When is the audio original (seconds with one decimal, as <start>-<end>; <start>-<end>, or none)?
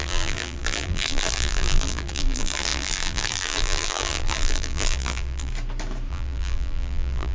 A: 5.5-6.1